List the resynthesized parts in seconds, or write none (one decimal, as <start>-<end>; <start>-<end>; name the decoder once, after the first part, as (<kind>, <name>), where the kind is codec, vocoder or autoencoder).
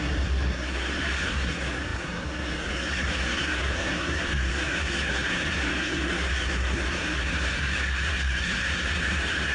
0.0-9.5 (codec, SNAC)